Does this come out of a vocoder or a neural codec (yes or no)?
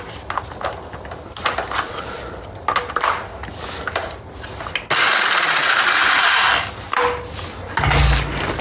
no